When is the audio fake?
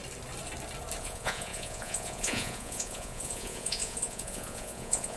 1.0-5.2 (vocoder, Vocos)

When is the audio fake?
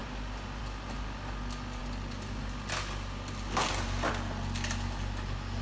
none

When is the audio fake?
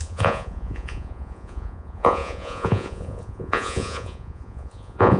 0.0-5.2 (vocoder, Vocos)